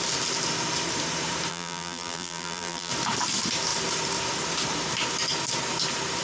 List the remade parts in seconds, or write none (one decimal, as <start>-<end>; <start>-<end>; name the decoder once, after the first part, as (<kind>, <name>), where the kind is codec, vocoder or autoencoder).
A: 1.5-2.9 (vocoder, BigVGAN v2)